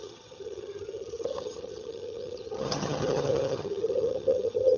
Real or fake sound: fake